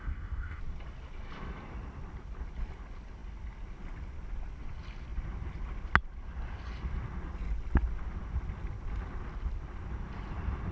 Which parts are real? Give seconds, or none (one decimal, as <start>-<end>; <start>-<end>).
0.6-10.7